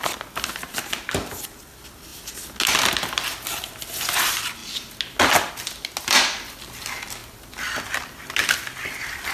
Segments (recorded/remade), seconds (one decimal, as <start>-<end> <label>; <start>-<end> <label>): 0.0-9.3 recorded